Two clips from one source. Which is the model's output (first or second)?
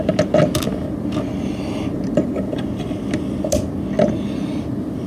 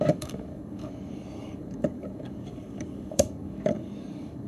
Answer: second